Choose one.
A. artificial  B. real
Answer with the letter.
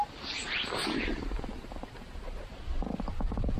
B